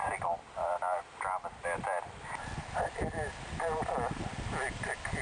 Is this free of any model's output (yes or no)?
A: yes